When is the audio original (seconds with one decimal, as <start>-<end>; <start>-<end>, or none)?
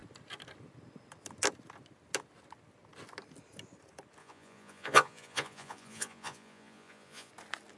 0.0-4.2; 7.3-7.8